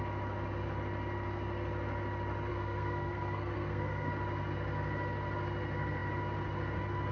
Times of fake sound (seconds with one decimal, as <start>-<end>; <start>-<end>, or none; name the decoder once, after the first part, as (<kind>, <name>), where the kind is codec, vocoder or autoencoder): 2.5-4.1 (codec, SNAC)